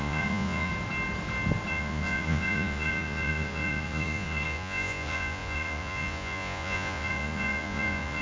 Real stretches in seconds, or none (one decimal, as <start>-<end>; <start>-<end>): 0.7-1.7